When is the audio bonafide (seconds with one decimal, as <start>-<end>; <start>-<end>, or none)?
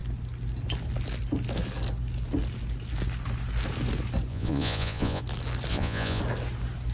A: 0.0-4.3; 5.2-5.7; 6.2-6.9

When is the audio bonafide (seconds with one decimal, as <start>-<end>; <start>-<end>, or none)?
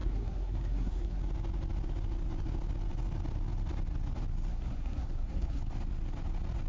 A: 1.2-4.5; 5.6-6.7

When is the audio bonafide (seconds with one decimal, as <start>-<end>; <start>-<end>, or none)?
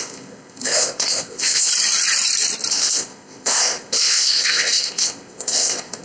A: 1.7-2.7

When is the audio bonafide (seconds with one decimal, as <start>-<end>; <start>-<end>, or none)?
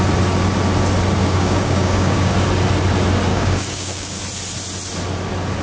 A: 0.0-1.2; 2.3-3.3; 4.2-5.6